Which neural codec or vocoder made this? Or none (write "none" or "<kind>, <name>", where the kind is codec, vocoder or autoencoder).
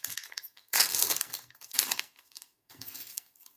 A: codec, SNAC